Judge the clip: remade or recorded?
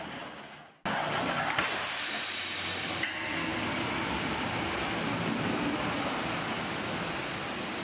recorded